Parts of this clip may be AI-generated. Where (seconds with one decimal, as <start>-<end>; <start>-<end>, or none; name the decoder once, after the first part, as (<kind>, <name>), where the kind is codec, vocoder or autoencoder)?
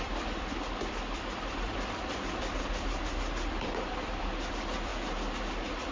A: 0.0-4.9 (vocoder, BigVGAN v2)